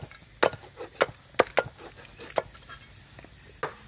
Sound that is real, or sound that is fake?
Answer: real